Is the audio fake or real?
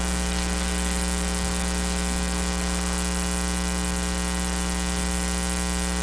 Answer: real